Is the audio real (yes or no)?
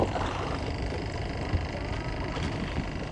yes